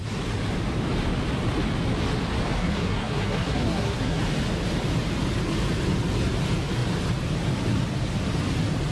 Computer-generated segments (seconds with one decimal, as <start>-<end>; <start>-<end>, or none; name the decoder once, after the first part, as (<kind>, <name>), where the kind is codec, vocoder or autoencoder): 2.6-4.2 (codec, SNAC)